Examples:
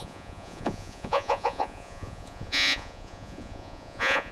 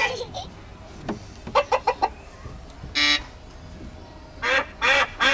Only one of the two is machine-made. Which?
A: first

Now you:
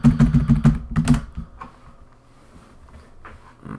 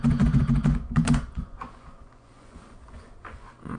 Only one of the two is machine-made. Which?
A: second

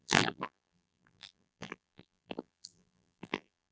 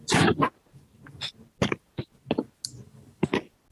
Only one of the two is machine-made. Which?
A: first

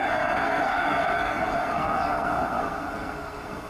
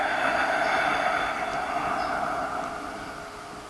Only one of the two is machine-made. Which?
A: first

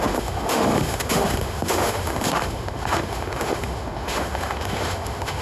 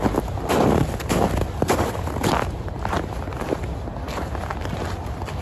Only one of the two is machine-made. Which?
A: first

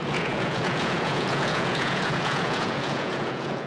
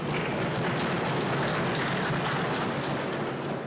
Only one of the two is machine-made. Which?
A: first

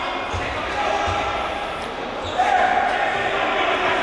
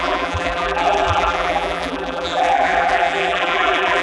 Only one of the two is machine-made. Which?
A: second